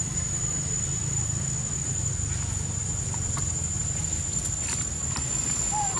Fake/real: real